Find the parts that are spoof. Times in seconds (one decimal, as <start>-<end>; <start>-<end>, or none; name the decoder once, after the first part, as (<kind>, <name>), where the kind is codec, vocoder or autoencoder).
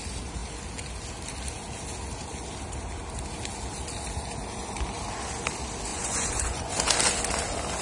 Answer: 5.9-6.7 (vocoder, Vocos)